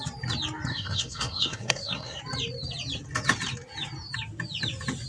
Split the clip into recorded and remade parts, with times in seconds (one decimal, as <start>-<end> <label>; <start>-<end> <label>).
0.0-0.7 recorded; 0.7-2.2 remade; 2.2-5.1 recorded